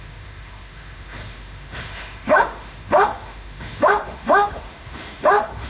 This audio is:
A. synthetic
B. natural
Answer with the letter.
A